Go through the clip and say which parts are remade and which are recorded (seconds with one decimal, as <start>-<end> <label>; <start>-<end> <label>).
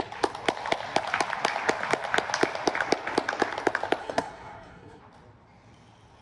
0.0-4.0 recorded; 4.0-5.0 remade; 5.0-6.2 recorded